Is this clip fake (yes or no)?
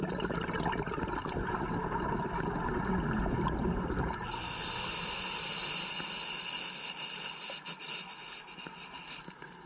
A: no